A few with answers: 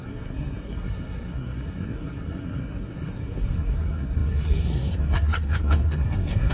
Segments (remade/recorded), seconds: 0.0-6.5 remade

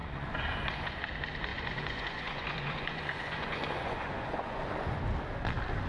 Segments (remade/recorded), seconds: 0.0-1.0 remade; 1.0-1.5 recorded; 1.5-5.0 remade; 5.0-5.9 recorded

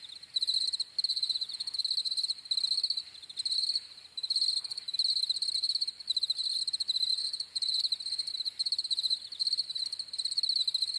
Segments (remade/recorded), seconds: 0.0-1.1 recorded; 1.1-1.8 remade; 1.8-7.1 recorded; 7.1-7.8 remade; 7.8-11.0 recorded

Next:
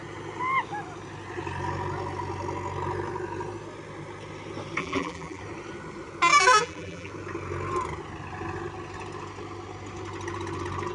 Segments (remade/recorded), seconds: 0.0-4.8 recorded; 4.8-5.4 remade; 5.4-6.3 recorded; 6.3-7.1 remade; 7.1-10.9 recorded

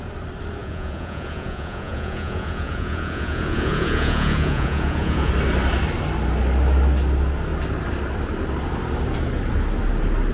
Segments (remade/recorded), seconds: 0.0-0.6 recorded; 0.6-5.3 remade; 5.3-10.3 recorded

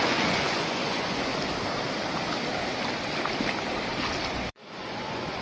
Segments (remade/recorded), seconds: 0.0-1.3 remade; 1.3-4.3 recorded; 4.3-5.4 remade

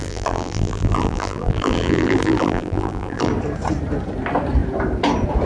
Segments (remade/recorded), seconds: 0.0-3.3 remade; 3.3-5.5 recorded